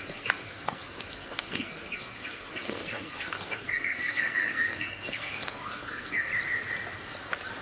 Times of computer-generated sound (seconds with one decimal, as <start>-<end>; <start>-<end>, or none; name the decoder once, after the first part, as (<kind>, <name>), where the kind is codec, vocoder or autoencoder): 0.0-6.3 (codec, SNAC)